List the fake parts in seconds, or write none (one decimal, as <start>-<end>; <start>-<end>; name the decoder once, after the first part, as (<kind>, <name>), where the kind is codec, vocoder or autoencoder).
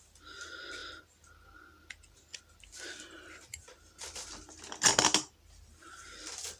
none